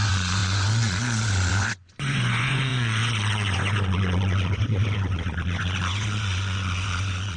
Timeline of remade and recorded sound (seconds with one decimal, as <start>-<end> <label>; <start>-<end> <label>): 0.0-7.4 remade